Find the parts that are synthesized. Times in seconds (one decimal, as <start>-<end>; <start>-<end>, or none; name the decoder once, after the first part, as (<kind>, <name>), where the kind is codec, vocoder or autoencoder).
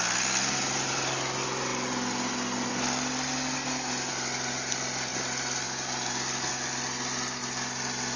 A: none